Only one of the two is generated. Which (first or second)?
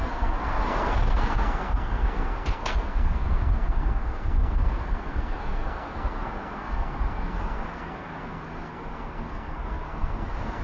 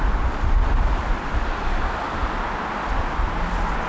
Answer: first